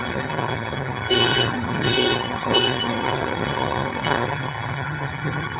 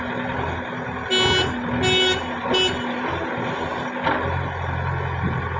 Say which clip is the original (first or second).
second